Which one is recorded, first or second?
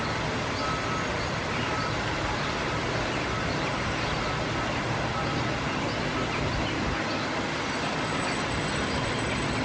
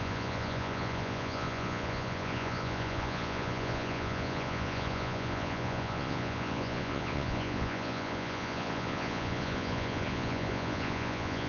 first